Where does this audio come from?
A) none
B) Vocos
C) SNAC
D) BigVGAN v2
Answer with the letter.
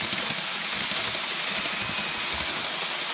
A